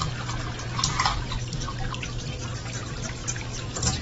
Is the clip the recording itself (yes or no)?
yes